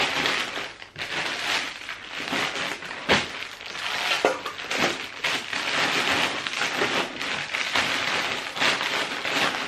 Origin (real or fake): real